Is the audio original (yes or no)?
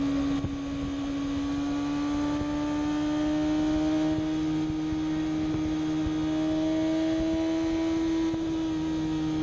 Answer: yes